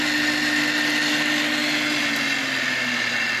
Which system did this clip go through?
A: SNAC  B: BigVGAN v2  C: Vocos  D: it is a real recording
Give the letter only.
D